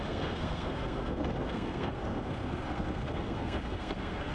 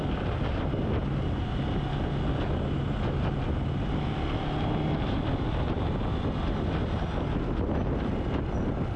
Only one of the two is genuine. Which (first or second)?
second